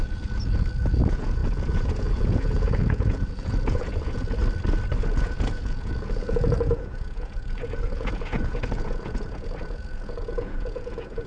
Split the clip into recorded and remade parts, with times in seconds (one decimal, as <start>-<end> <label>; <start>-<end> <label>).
0.0-4.4 remade; 4.4-5.0 recorded; 5.0-11.3 remade